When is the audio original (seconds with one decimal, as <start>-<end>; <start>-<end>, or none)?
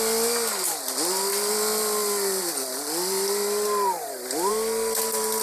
0.0-5.4